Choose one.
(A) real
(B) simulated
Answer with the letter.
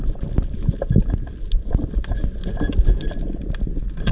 A